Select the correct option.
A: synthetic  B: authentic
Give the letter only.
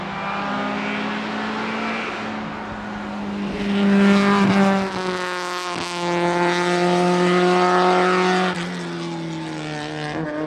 B